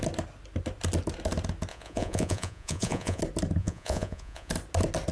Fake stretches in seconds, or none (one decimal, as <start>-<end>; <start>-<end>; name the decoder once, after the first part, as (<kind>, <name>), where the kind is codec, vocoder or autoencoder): 1.7-3.2 (vocoder, Vocos); 3.6-4.5